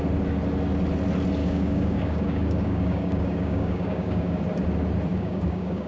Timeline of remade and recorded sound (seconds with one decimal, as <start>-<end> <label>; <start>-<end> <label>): 0.0-1.4 recorded; 1.4-4.4 remade; 4.4-5.1 recorded; 5.1-5.9 remade